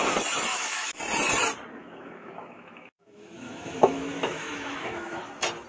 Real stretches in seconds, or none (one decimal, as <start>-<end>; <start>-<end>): 0.0-0.5; 1.0-1.8; 5.2-5.7